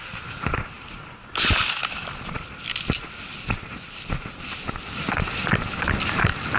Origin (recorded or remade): recorded